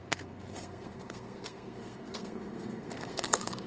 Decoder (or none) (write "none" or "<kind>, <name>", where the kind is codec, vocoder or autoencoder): codec, SNAC